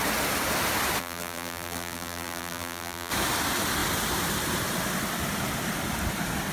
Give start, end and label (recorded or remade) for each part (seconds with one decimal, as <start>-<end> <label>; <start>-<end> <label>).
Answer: 0.0-1.0 recorded; 1.0-3.1 remade; 3.1-6.5 recorded